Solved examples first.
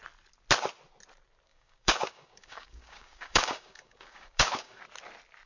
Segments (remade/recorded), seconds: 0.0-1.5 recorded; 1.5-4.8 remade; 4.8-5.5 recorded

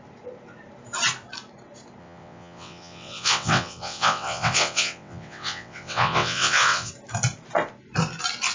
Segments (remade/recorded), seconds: 0.0-2.0 recorded; 2.0-6.9 remade; 6.9-8.5 recorded

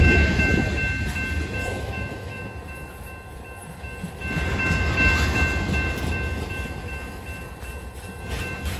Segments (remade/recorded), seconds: 0.0-1.7 recorded; 1.7-2.4 remade; 2.4-8.8 recorded

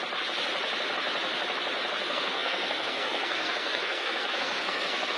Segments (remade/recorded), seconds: 0.0-2.0 recorded; 2.0-5.2 remade